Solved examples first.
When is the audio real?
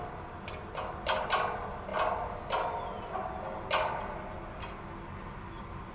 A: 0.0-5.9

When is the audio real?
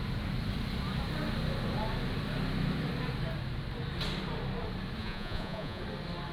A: 0.0-5.0; 5.8-6.3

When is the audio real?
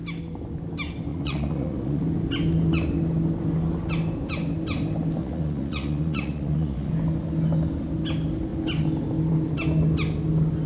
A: 0.0-1.1; 2.0-5.2; 6.9-10.7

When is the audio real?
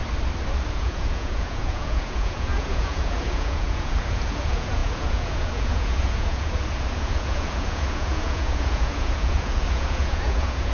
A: 0.0-0.7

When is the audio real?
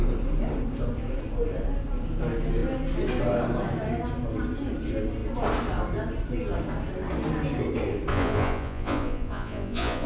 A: 0.0-8.1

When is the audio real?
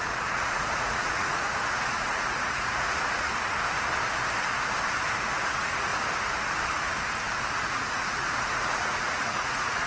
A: 3.3-5.5; 5.9-7.6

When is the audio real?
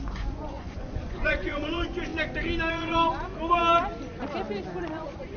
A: 2.1-2.7; 3.6-4.8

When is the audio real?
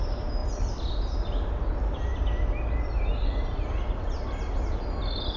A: 0.0-5.4